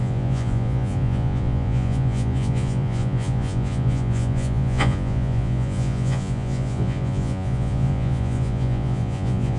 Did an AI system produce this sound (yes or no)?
yes